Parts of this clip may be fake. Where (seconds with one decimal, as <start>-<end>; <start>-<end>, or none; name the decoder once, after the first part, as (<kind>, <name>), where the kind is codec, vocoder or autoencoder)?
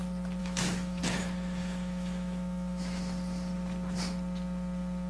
0.4-1.0 (autoencoder, DAC-VAE); 1.6-3.0